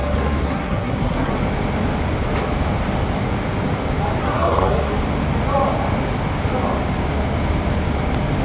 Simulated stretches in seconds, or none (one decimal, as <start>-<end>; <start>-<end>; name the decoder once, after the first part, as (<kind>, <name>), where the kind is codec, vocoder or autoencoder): 0.0-1.3 (codec, SNAC); 4.2-4.9